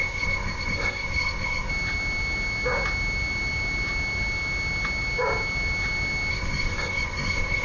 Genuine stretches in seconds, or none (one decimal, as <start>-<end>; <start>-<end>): 1.7-6.3

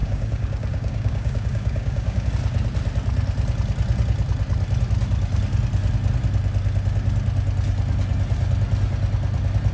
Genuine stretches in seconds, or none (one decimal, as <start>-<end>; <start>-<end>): 2.3-9.7